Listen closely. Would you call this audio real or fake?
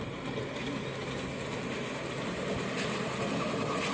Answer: real